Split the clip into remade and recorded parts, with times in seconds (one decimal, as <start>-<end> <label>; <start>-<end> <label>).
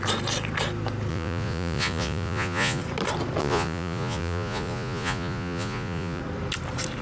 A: 0.0-1.1 recorded; 1.1-2.8 remade; 2.8-3.4 recorded; 3.4-6.2 remade; 6.2-7.0 recorded